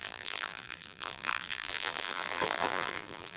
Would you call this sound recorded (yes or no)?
no